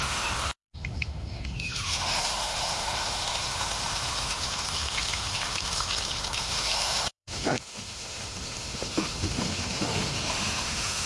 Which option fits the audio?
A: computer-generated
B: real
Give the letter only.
A